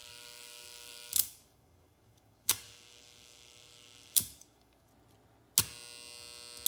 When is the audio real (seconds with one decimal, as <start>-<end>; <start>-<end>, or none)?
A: 4.9-6.7